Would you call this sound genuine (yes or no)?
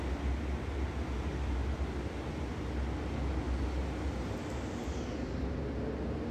yes